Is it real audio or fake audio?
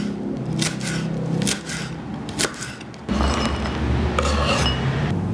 real